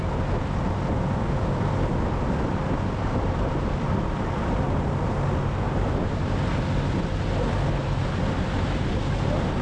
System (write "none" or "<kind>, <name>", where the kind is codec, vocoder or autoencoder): none